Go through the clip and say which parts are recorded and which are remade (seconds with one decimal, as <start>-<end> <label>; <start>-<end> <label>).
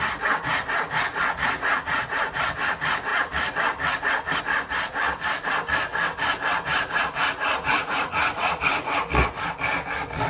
0.0-1.7 recorded; 1.7-2.3 remade; 2.3-7.7 recorded; 7.7-9.0 remade; 9.0-10.3 recorded